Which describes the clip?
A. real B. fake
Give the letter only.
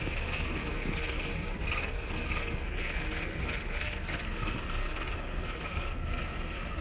B